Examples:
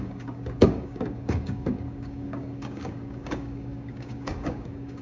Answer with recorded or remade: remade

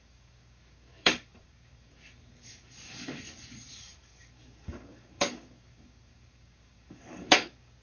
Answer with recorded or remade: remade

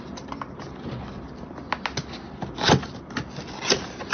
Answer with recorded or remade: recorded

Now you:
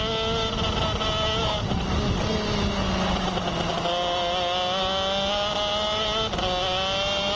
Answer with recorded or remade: recorded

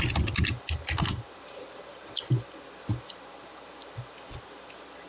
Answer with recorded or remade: recorded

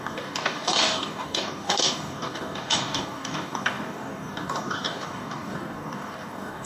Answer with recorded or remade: remade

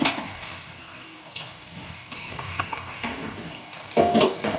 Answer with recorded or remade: remade